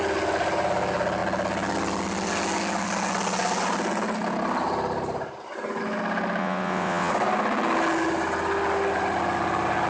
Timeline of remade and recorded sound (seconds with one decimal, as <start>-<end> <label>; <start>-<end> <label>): 0.0-6.4 recorded; 6.4-7.1 remade; 7.1-9.9 recorded